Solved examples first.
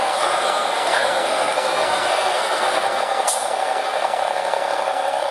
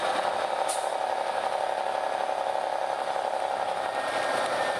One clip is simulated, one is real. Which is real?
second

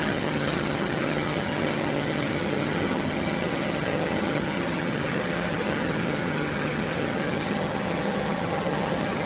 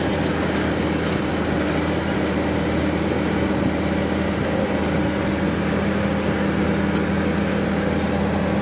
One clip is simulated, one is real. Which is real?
second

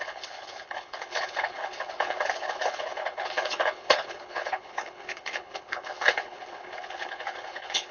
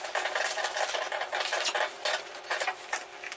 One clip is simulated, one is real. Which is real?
second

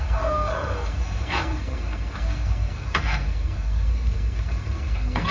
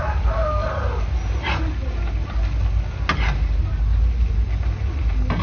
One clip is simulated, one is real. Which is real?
second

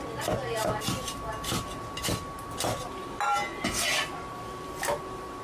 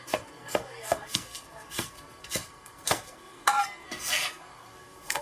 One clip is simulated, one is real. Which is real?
first